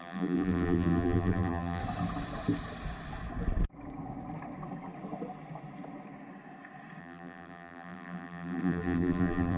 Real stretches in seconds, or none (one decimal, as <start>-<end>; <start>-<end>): 1.8-7.0

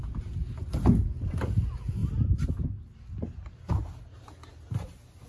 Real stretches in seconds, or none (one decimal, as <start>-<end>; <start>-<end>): 0.0-5.3

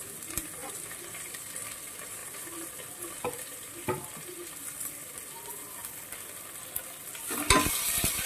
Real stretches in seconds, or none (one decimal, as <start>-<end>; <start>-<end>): 5.8-7.7

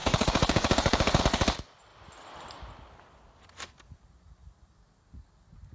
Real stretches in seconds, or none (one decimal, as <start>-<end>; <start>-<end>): 1.2-5.7

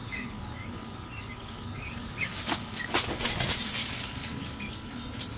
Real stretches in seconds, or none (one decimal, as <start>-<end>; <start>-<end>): 3.2-3.8; 4.9-5.4

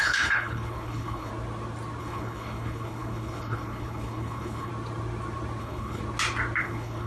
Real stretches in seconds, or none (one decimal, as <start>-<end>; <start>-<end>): 1.3-2.0; 4.7-5.6; 6.0-6.6